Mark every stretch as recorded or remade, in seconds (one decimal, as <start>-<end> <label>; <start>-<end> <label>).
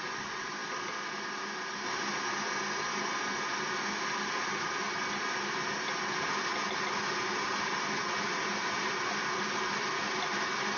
0.0-10.8 recorded